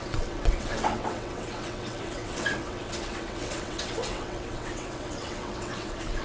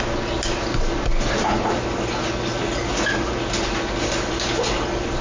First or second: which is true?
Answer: second